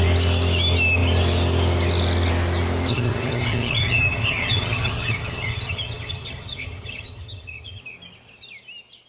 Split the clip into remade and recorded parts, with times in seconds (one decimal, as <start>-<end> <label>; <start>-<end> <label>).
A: 0.0-2.9 recorded; 2.9-7.8 remade; 7.8-9.1 recorded